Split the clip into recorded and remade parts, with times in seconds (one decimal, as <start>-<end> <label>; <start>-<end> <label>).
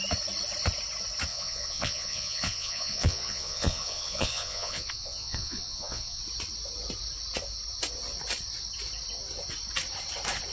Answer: 0.0-1.3 recorded; 1.3-6.2 remade; 6.2-10.5 recorded